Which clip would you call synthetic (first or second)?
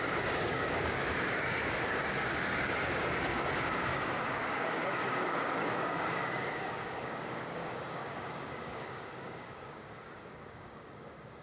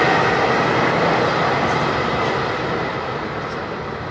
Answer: first